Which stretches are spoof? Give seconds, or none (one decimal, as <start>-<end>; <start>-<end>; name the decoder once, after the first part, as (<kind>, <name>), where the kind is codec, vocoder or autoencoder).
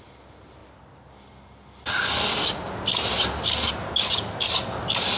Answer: none